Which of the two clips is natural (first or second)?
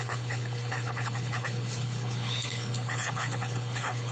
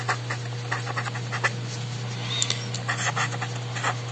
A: second